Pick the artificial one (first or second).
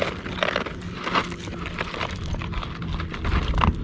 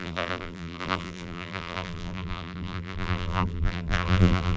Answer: second